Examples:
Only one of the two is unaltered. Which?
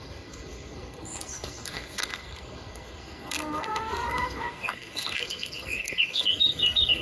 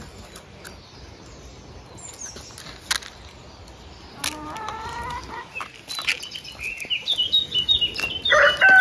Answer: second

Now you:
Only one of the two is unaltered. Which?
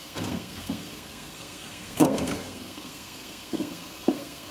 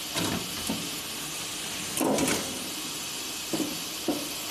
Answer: second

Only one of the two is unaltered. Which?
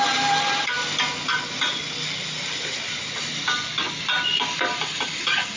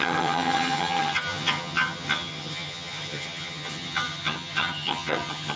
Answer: first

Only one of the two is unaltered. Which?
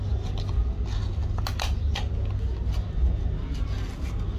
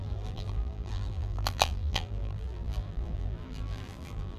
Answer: first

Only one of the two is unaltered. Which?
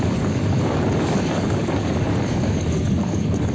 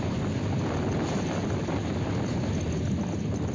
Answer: second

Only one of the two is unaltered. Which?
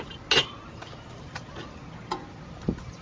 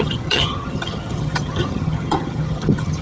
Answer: first